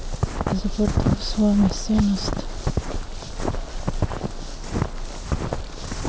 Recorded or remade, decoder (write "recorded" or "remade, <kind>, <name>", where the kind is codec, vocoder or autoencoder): recorded